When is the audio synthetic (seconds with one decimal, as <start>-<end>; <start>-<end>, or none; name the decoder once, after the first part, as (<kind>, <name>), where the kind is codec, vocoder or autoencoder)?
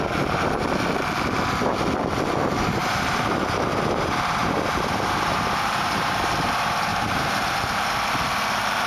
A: 2.8-3.4 (vocoder, BigVGAN v2); 4.4-6.0; 6.9-7.5